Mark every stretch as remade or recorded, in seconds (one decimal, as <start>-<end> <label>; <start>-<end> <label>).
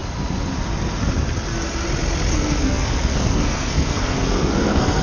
0.0-2.3 recorded; 2.3-5.0 remade